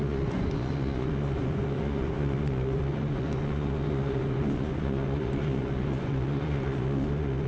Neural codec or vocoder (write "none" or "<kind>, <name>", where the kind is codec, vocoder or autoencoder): vocoder, Vocos